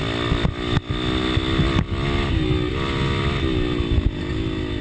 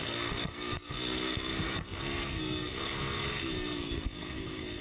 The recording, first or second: first